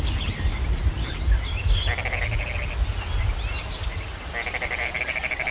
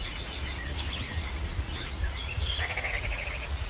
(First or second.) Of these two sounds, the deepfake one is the second